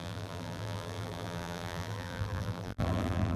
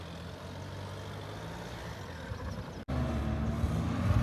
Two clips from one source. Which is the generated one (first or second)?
first